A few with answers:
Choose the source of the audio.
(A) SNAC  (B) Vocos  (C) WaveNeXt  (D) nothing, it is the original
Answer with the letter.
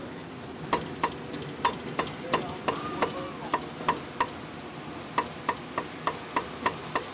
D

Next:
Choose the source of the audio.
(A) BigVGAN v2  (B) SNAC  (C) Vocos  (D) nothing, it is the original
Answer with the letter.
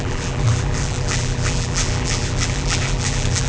A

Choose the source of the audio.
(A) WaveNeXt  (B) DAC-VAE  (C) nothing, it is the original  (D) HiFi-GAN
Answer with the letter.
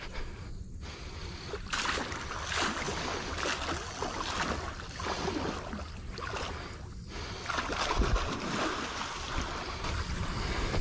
C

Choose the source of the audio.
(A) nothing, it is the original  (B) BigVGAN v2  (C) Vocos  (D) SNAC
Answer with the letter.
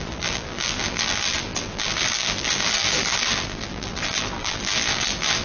B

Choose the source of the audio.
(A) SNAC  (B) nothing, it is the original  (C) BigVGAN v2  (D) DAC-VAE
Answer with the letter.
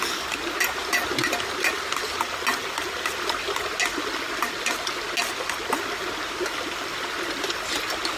B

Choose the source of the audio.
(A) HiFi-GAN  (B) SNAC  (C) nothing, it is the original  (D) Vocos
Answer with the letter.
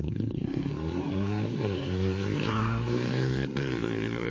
B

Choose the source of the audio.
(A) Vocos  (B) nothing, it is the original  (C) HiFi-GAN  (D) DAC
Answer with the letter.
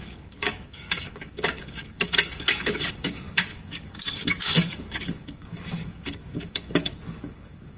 D